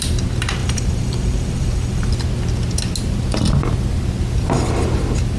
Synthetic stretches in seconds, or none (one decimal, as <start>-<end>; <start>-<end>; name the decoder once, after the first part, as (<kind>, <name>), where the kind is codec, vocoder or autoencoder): 0.6-2.1 (vocoder, BigVGAN v2)